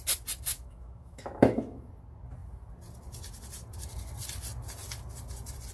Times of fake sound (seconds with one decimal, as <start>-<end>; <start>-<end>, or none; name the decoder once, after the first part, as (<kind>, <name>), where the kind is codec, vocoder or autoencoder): 0.5-1.9 (autoencoder, DAC-VAE)